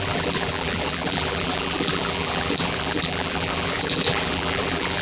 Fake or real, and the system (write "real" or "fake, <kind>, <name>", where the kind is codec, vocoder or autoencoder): fake, vocoder, BigVGAN v2